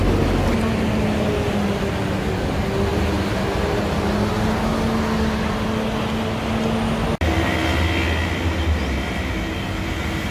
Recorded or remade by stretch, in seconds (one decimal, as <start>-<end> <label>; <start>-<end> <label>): 0.0-10.3 recorded